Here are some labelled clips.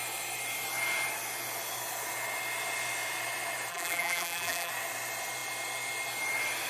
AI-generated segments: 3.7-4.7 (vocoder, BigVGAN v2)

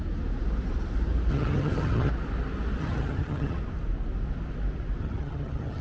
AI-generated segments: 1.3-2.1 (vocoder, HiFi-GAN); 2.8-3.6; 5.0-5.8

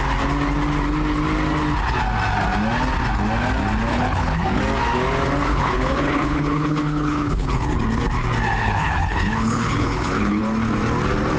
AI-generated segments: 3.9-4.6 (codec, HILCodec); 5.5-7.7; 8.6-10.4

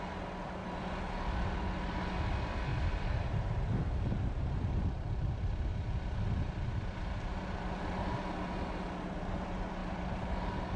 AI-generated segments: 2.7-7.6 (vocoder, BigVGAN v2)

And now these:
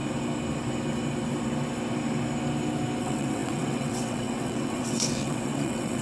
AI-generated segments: 3.0-6.0 (vocoder, WaveNeXt)